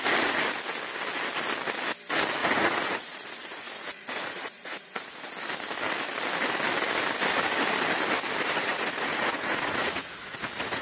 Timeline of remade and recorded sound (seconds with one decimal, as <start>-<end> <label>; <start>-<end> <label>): 0.0-2.4 recorded; 2.4-5.3 remade; 5.3-8.7 recorded; 8.7-10.8 remade